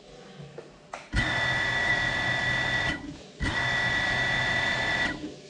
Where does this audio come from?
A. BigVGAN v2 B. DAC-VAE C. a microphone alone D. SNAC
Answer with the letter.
C